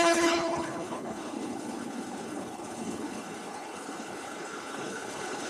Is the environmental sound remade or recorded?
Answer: remade